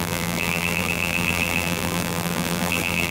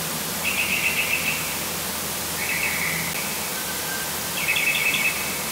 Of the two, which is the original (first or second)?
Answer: second